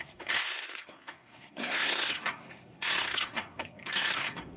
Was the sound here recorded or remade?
remade